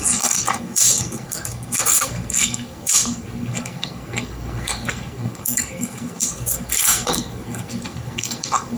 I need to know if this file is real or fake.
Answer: fake